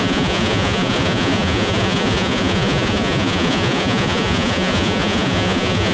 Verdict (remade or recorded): remade